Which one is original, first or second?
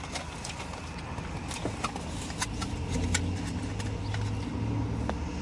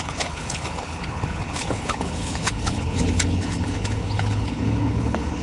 first